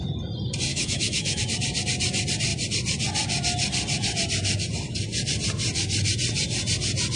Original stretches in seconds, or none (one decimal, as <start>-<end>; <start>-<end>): 0.0-0.7; 1.4-7.2